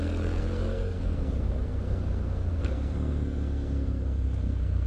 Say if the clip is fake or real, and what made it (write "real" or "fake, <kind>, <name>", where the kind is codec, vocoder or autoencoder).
fake, codec, SNAC